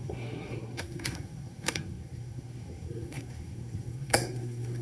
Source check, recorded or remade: remade